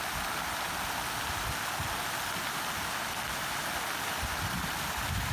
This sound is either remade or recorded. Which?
recorded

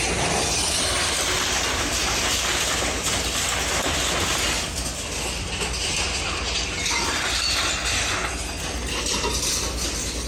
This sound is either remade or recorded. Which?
recorded